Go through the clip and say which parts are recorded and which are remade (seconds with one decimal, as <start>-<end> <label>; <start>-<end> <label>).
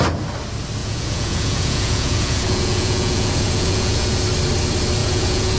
0.0-0.8 recorded; 0.8-4.2 remade; 4.2-5.0 recorded; 5.0-5.6 remade